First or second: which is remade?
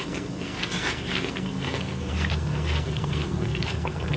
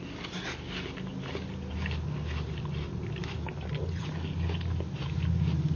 first